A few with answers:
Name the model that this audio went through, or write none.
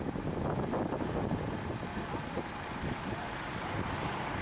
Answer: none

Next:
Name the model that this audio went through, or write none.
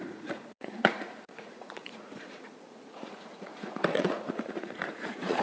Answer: vocoder, Vocos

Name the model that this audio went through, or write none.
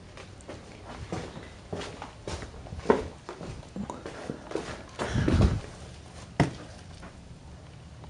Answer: none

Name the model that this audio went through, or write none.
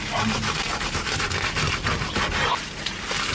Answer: none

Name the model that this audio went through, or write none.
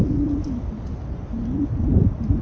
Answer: none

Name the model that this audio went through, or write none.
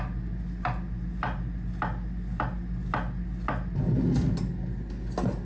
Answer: none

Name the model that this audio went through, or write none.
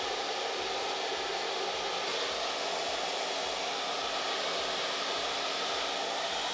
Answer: none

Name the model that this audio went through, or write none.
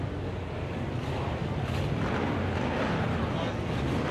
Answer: none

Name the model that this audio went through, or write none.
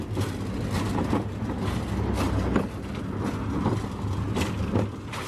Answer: none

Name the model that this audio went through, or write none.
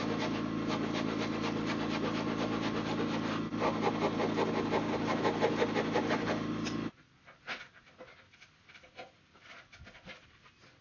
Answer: none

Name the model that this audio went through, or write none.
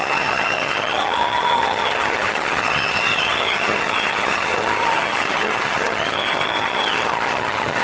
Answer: vocoder, HiFi-GAN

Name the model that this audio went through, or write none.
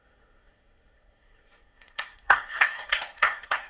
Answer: codec, SNAC